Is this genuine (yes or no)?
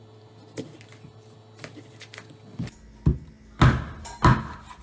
yes